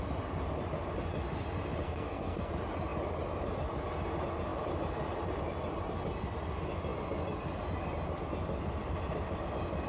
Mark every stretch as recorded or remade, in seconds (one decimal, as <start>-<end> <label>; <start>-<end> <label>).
0.0-1.8 recorded; 1.8-2.5 remade; 2.5-9.9 recorded